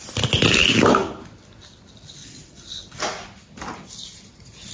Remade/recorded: recorded